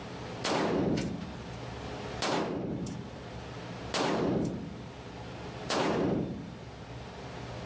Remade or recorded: recorded